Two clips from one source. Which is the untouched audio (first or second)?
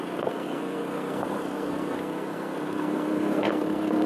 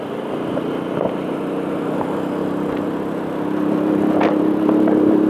second